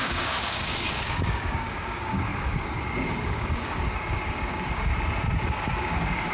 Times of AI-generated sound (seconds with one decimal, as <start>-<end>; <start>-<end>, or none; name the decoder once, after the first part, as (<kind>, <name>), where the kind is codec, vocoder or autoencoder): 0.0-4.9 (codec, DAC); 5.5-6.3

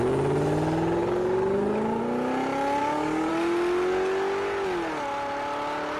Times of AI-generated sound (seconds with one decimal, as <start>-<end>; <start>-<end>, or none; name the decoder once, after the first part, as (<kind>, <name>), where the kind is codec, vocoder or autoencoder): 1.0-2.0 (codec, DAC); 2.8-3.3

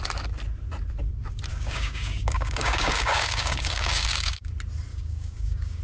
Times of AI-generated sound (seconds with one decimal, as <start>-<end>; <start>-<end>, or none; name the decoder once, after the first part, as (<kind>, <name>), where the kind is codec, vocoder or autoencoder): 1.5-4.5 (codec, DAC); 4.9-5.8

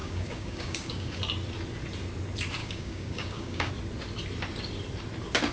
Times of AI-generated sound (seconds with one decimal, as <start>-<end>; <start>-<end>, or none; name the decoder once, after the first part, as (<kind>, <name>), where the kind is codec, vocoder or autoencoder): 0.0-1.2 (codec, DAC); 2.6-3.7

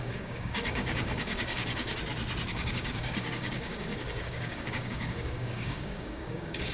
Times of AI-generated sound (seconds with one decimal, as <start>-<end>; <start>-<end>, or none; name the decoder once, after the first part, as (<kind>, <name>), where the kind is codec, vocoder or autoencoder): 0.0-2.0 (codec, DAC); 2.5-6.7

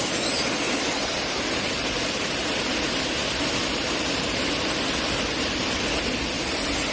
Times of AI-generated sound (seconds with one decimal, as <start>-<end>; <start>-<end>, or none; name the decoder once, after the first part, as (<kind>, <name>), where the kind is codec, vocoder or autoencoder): none

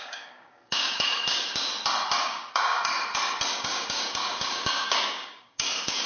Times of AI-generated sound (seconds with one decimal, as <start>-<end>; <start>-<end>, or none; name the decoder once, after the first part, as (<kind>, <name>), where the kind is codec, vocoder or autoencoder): 0.0-1.7 (codec, DAC); 2.2-2.9; 3.6-6.1